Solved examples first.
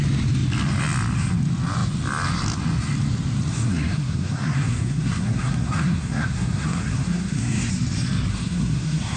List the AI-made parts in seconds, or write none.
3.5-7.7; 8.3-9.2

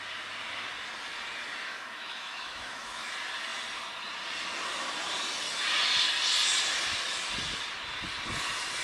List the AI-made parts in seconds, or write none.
1.7-3.1

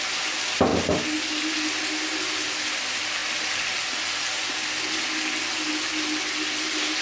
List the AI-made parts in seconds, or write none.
none

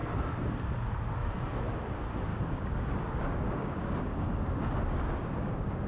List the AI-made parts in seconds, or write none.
2.3-5.9

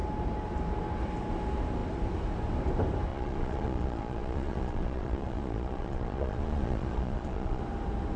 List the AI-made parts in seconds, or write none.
3.1-7.6

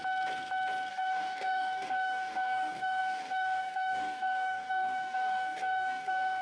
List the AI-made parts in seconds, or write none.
0.9-6.4